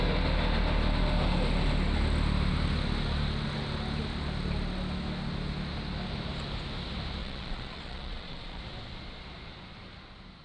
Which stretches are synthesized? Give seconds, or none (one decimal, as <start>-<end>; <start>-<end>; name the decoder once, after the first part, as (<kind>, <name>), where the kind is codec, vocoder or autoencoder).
7.2-8.6 (vocoder, Vocos)